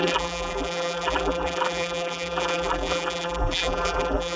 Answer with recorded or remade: remade